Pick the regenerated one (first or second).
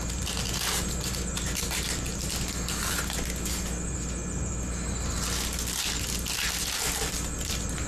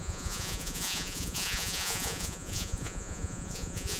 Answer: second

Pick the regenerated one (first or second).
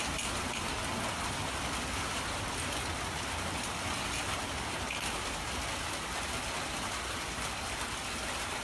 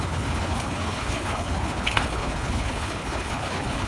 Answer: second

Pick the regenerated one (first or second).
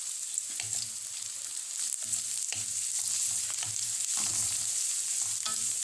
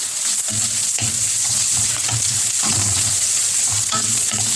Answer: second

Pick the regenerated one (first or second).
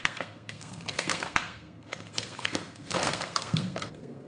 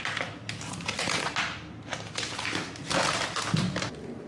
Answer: first